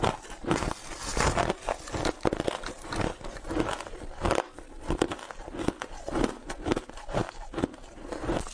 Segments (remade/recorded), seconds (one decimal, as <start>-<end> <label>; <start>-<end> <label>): 0.0-8.5 recorded